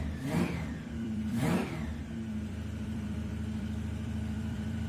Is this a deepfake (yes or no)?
yes